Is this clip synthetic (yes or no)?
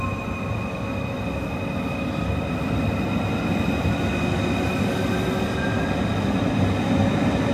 no